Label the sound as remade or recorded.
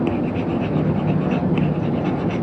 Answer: recorded